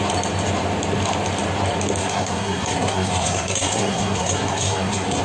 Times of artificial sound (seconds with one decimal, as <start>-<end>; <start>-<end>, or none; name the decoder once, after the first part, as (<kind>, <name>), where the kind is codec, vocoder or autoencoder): 2.0-5.2 (codec, SNAC)